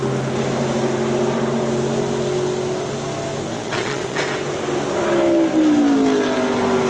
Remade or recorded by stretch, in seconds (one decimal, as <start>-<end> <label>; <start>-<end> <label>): 0.0-3.5 recorded; 3.5-4.2 remade; 4.2-6.9 recorded